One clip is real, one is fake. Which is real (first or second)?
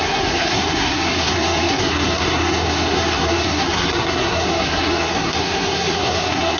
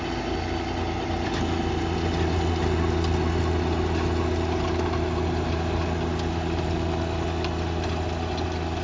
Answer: second